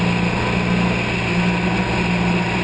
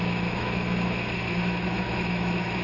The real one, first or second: first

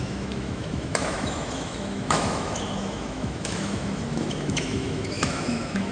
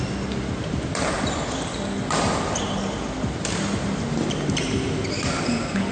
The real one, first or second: second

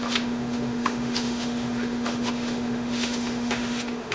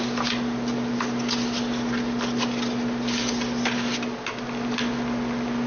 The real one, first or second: second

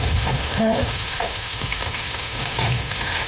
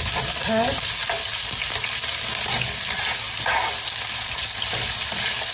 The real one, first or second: second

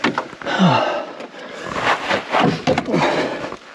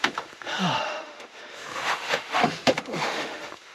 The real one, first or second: first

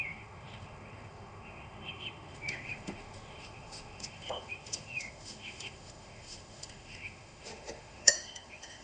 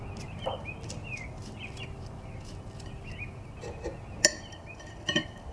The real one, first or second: second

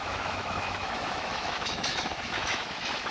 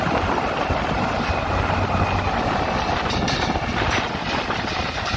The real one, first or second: second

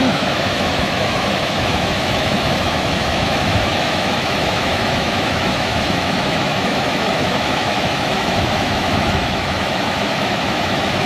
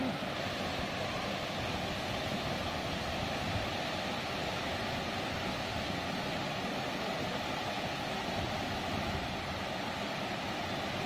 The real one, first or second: second